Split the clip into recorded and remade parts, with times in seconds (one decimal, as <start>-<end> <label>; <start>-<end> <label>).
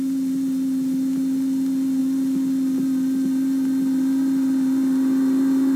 0.0-5.8 recorded